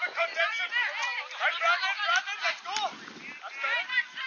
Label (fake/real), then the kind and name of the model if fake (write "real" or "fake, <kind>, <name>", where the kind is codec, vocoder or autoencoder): real